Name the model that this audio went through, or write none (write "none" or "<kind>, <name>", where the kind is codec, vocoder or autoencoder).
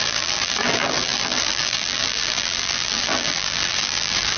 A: vocoder, BigVGAN v2